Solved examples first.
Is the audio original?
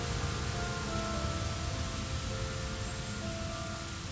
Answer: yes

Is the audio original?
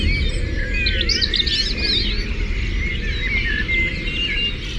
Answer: yes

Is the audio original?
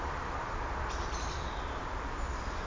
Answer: yes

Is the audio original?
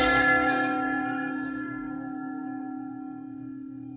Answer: no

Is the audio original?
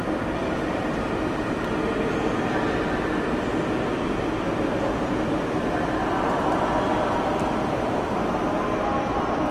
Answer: yes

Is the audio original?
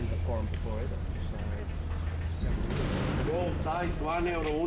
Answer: yes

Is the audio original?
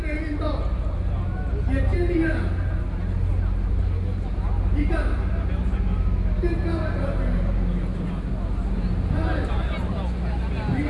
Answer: yes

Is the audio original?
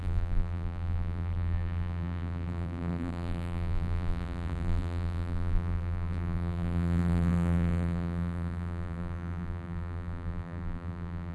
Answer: no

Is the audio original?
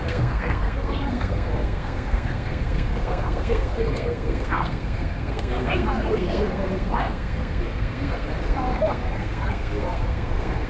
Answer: no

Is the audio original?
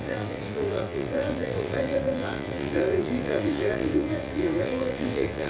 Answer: no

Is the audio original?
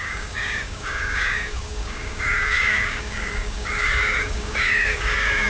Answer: no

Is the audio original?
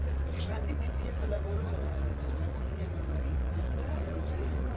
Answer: no